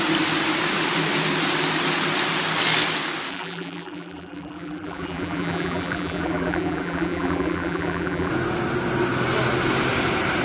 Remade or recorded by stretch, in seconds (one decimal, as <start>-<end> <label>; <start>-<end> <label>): 0.0-3.3 recorded; 3.3-8.3 remade; 8.3-10.4 recorded

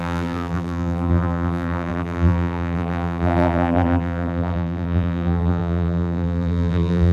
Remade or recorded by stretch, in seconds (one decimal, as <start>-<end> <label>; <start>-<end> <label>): 0.0-7.1 remade

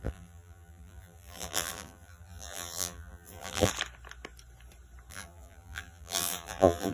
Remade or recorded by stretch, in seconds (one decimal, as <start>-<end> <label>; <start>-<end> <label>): 0.0-3.7 remade; 3.7-5.1 recorded; 5.1-6.9 remade

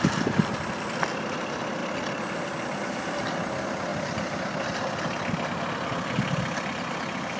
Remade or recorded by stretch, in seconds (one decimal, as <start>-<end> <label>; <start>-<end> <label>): 0.0-7.4 recorded